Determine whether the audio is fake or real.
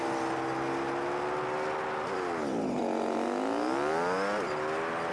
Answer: real